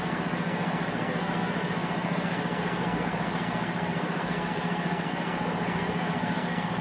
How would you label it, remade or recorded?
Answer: remade